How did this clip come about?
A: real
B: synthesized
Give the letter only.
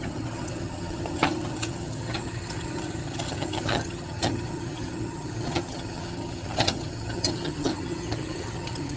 B